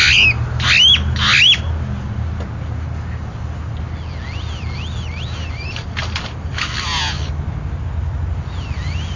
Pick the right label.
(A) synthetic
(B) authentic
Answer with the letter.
B